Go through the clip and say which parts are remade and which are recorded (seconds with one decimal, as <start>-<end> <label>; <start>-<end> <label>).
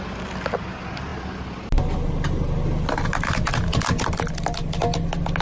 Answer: 0.0-5.4 recorded